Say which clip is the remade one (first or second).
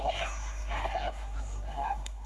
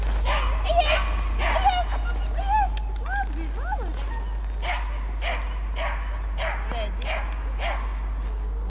first